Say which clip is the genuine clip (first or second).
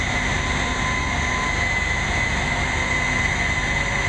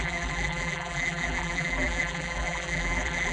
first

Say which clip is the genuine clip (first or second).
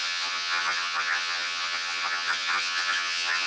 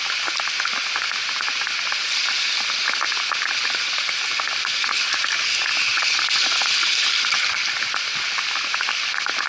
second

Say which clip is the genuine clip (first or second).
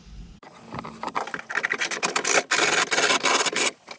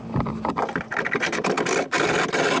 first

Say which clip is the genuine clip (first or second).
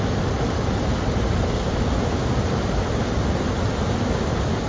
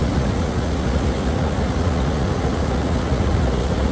first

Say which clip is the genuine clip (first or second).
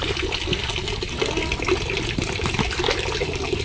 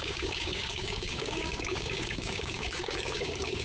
first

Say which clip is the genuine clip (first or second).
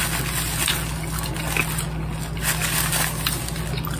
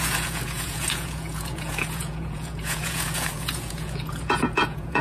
first